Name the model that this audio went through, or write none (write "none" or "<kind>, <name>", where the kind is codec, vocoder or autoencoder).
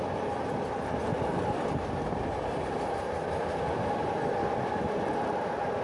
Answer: none